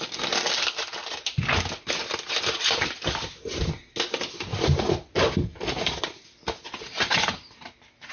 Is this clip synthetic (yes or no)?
no